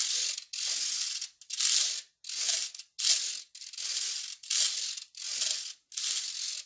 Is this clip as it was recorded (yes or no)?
yes